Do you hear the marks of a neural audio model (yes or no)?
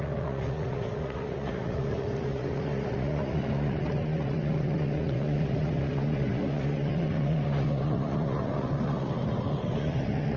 yes